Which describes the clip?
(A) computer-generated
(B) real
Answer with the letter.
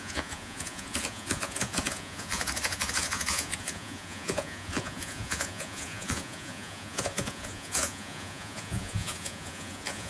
A